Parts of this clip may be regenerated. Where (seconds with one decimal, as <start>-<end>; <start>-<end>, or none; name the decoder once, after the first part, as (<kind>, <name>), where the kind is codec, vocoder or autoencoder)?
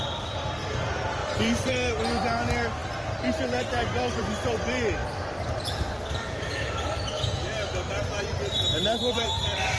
1.2-2.0 (vocoder, BigVGAN v2)